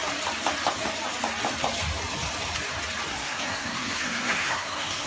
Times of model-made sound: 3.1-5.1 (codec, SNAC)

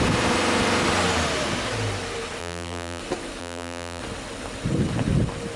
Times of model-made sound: 2.4-3.0 (vocoder, BigVGAN v2); 3.4-4.0